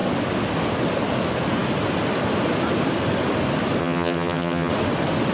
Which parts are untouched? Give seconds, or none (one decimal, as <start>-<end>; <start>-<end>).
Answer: 0.0-3.8; 4.7-5.3